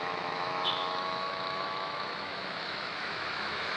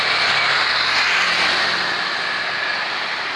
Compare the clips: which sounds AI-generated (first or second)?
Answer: first